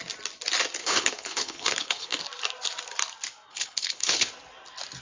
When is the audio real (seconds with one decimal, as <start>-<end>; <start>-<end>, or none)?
0.0-0.8; 2.2-3.5; 4.3-5.0